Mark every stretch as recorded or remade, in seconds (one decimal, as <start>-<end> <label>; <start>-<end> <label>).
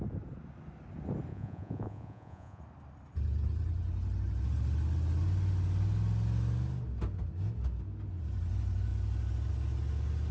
0.0-1.3 recorded; 1.3-2.6 remade; 2.6-10.3 recorded